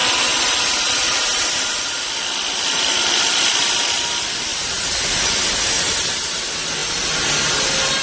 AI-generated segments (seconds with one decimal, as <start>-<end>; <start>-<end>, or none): none